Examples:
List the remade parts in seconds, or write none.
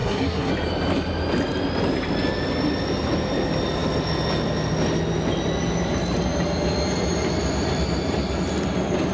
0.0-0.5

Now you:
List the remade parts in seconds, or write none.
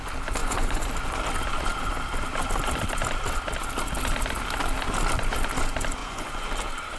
0.4-0.9; 6.0-6.5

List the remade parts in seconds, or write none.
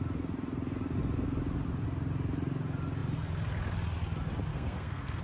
4.5-5.2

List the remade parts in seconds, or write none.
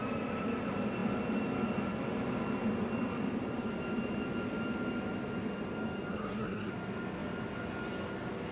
6.1-6.7